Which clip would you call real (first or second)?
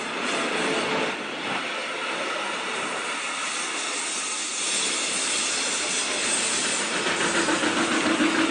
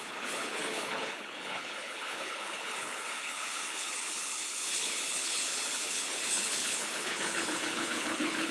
first